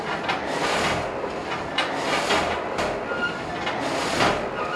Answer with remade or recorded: recorded